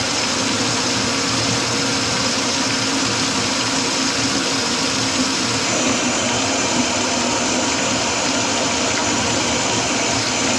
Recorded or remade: recorded